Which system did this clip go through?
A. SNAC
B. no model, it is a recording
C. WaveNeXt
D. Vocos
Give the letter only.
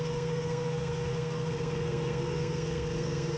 A